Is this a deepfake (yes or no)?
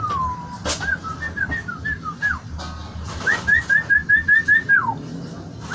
no